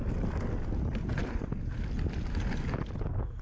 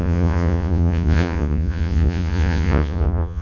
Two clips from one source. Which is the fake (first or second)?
second